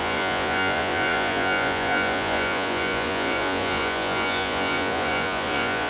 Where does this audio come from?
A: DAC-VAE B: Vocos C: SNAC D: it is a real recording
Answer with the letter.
B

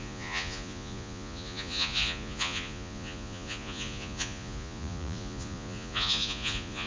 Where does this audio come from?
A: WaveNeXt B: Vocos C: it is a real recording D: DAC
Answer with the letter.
B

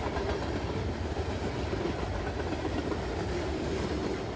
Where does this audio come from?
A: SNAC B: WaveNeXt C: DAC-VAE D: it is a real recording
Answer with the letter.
D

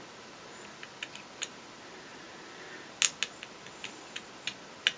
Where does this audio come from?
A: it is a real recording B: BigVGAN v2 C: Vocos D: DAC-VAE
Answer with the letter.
A